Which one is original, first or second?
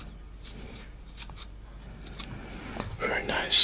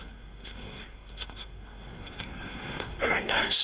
first